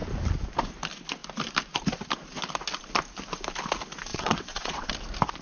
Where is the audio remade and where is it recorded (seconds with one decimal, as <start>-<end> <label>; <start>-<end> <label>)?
0.0-4.1 recorded; 4.1-4.9 remade; 4.9-5.4 recorded